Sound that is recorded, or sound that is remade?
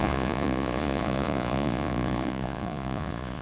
remade